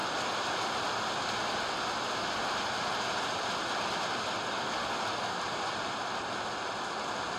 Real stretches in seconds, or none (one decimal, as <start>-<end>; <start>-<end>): 0.0-5.1; 6.3-7.4